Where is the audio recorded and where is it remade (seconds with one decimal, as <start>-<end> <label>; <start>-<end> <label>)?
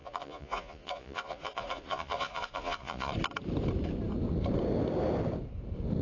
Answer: 0.0-3.1 remade; 3.1-6.0 recorded